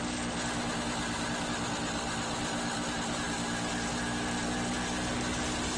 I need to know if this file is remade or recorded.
recorded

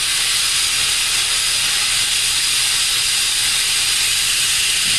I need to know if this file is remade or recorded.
recorded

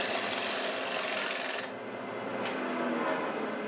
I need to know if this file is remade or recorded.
recorded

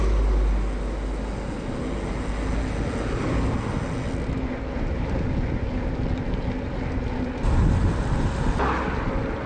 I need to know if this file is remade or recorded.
recorded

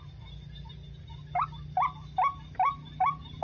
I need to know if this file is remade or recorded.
recorded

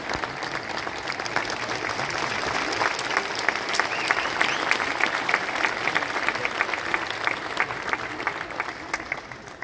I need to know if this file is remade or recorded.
recorded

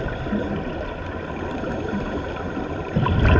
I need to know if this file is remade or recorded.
remade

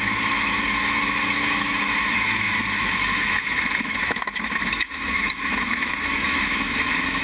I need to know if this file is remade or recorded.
remade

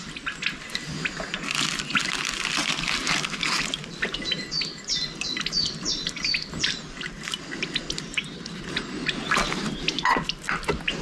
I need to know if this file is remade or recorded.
recorded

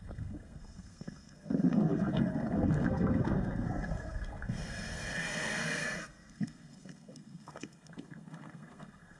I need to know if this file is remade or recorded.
remade